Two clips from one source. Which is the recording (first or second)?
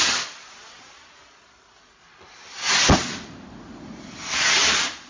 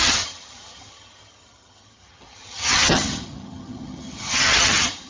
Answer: first